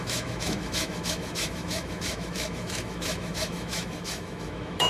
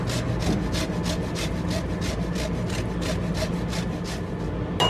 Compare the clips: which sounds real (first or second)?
second